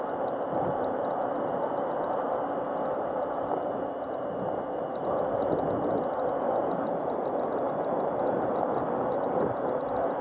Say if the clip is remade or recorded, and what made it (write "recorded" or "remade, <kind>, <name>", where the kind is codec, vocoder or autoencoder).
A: recorded